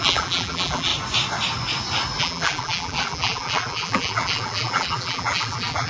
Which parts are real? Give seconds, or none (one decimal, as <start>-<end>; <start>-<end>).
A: 0.9-2.2